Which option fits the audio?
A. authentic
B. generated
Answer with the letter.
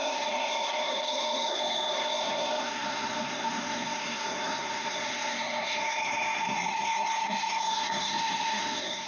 B